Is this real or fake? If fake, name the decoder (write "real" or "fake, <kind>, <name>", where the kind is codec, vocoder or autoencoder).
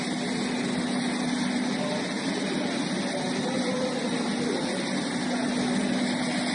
real